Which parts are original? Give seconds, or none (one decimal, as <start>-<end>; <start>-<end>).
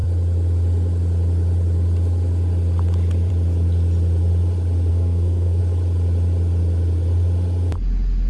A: 0.0-4.9; 5.6-8.3